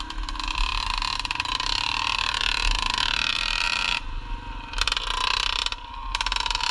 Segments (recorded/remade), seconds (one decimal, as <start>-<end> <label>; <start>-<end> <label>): 0.0-6.7 remade